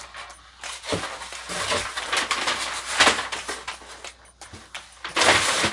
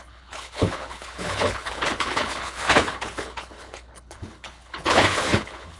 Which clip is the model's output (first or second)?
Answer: second